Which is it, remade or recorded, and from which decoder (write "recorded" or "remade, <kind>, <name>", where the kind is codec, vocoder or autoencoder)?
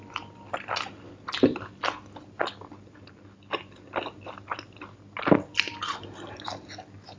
recorded